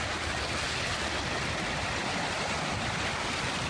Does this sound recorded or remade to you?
recorded